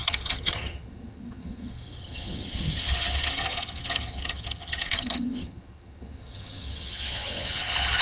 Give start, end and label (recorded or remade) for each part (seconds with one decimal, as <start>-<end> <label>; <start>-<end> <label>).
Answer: 0.0-8.0 remade

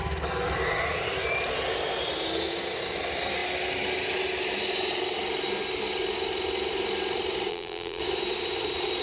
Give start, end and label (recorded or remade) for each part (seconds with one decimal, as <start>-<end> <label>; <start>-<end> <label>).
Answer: 0.0-7.5 recorded; 7.5-8.0 remade; 8.0-9.0 recorded

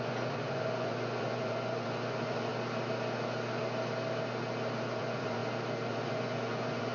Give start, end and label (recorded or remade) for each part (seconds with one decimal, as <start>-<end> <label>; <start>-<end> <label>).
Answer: 0.0-2.5 remade; 2.5-5.0 recorded; 5.0-5.4 remade; 5.4-5.9 recorded; 5.9-6.9 remade

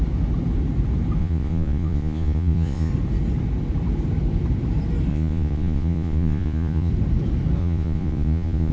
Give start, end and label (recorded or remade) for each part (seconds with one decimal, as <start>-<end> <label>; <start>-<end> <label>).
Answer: 0.0-1.2 recorded; 1.2-2.9 remade; 2.9-5.1 recorded; 5.1-6.9 remade; 6.9-7.6 recorded; 7.6-8.7 remade

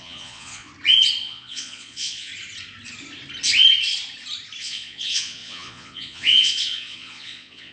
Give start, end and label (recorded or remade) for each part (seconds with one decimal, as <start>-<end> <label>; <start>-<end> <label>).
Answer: 0.0-0.7 remade; 0.7-1.2 recorded; 1.2-2.3 remade; 2.3-4.6 recorded; 4.6-7.7 remade

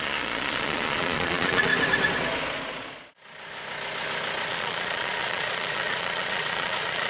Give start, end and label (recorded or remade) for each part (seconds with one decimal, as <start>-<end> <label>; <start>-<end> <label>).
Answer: 0.0-1.7 remade; 1.7-4.5 recorded; 4.5-7.1 remade